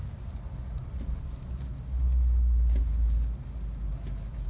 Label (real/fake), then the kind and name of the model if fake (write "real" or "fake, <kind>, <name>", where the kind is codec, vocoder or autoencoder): real